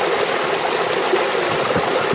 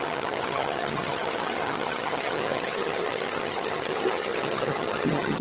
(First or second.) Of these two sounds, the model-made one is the second